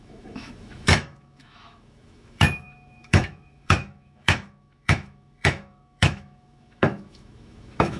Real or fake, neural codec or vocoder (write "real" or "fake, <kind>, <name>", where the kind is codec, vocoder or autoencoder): fake, autoencoder, DAC-VAE